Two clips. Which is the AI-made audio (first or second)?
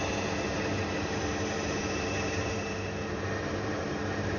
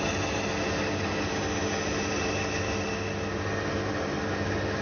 first